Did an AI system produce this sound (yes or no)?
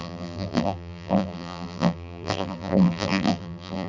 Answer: yes